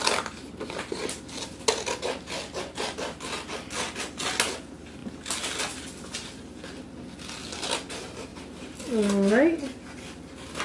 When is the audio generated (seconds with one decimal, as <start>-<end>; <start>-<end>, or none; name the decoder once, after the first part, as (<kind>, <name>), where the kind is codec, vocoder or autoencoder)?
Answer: none